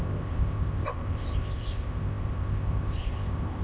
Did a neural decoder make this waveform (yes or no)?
yes